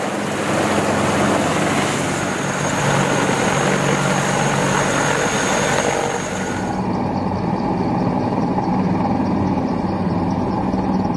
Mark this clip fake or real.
real